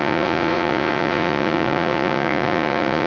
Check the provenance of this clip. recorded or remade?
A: remade